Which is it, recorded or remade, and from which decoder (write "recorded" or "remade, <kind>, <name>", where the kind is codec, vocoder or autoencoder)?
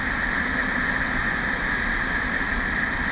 recorded